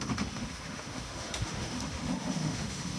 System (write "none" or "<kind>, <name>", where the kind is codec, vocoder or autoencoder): autoencoder, DAC-VAE